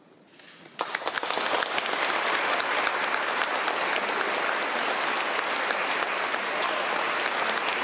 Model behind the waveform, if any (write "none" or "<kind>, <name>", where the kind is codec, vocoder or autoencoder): none